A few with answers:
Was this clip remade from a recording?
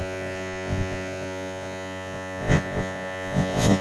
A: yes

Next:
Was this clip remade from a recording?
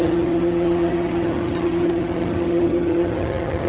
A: yes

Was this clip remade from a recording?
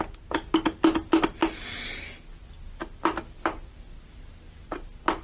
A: no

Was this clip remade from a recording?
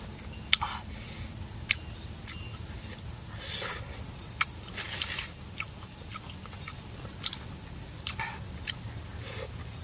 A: no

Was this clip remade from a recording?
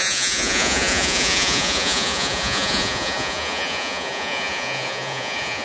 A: yes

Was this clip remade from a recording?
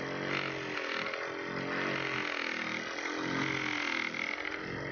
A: no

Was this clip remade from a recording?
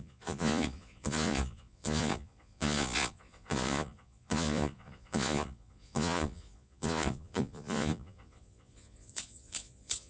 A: yes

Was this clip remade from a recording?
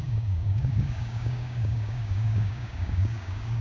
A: yes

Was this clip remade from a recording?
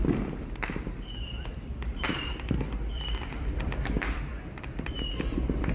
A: yes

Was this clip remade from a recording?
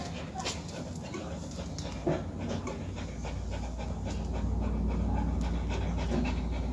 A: no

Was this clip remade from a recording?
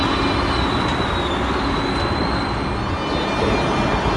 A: no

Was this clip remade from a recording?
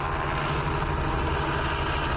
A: no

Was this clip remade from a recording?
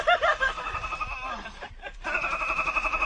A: no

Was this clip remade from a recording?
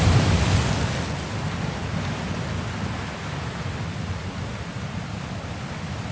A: no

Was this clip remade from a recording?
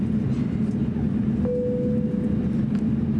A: no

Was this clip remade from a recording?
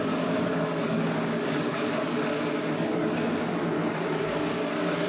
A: yes